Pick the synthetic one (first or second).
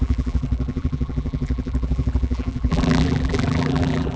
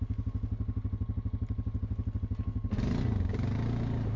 first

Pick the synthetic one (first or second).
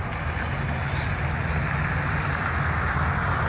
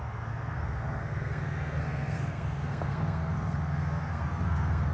second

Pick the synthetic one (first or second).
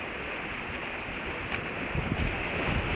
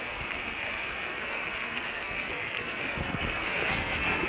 second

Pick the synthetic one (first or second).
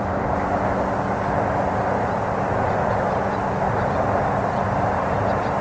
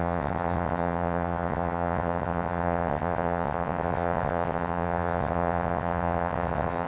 second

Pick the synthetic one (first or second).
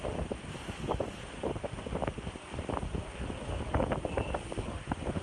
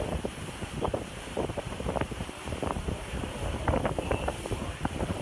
second